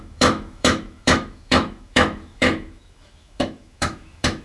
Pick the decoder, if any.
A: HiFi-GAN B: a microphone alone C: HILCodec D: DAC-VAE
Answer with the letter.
D